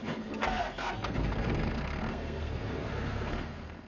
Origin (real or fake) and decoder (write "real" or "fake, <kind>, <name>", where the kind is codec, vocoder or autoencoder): fake, codec, SNAC